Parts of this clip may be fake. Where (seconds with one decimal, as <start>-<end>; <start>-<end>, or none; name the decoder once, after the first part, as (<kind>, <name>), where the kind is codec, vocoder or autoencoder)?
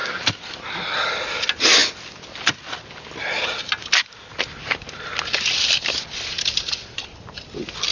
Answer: 6.3-7.0 (vocoder, BigVGAN v2)